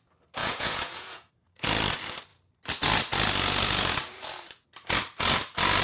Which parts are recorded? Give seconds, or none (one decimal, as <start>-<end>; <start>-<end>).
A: 0.0-0.4; 1.3-5.8

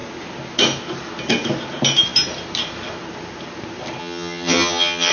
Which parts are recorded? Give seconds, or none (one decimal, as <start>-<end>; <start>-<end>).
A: 0.0-4.0

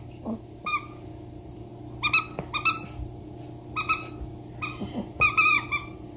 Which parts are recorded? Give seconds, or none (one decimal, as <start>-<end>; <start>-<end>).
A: 1.7-4.7

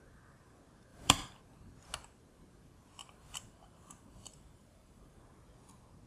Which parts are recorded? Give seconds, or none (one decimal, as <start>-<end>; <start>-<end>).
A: 0.0-0.9; 1.4-3.0; 5.2-6.1

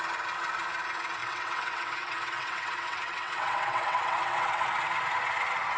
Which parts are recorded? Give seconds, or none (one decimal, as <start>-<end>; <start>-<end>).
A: 0.0-1.2; 4.7-5.8

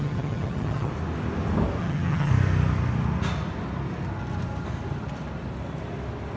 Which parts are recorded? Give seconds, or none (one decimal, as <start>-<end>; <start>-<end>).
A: 0.9-1.8; 2.3-6.4

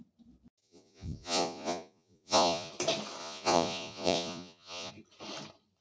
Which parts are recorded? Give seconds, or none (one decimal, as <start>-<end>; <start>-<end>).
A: 0.0-0.6; 2.7-3.2; 4.9-5.8

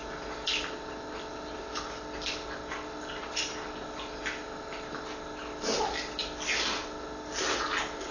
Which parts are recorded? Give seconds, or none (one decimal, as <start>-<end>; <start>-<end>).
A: 0.0-8.1